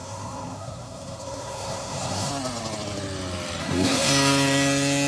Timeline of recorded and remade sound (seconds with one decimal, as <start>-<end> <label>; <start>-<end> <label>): 0.0-2.3 remade; 2.3-3.6 recorded; 3.6-4.1 remade; 4.1-5.1 recorded